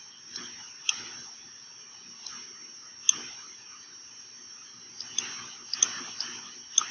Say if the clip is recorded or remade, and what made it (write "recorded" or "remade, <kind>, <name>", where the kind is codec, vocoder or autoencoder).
recorded